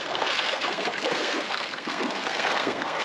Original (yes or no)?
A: no